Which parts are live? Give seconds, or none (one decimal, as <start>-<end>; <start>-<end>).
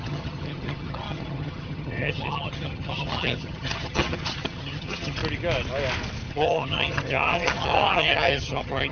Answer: 5.2-6.3